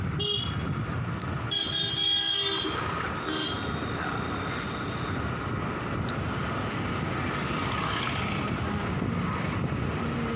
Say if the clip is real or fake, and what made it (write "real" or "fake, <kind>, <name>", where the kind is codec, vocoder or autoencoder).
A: real